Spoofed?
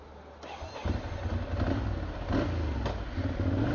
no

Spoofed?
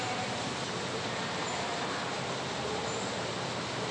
no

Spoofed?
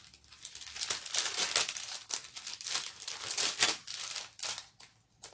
no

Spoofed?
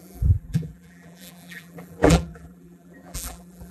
yes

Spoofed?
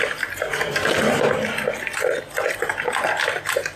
no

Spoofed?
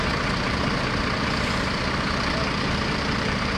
yes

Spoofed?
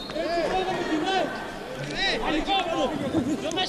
no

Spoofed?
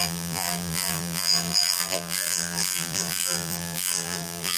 yes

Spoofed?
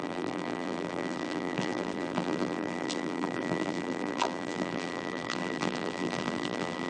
yes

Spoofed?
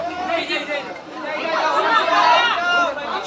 yes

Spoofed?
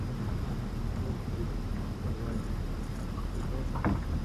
yes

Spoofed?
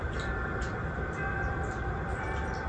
yes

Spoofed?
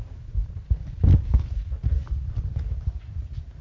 no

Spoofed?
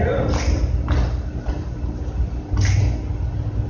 no